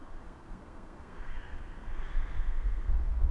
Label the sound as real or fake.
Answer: fake